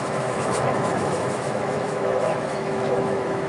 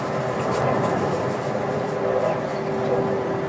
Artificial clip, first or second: first